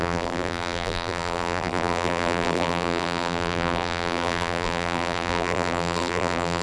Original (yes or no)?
no